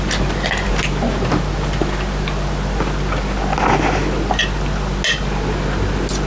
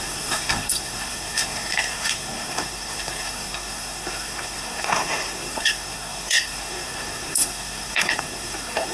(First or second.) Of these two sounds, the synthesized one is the second